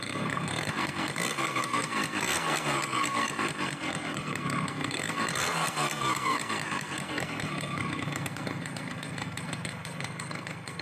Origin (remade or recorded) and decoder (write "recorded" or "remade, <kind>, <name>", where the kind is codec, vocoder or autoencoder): remade, codec, SNAC